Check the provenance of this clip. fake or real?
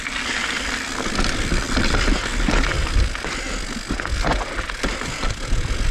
real